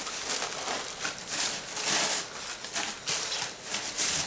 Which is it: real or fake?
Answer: real